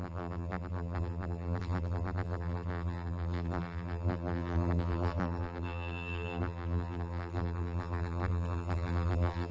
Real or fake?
fake